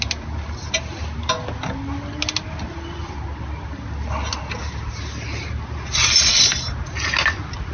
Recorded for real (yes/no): yes